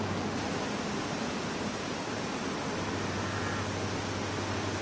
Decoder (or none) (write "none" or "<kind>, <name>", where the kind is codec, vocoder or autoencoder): none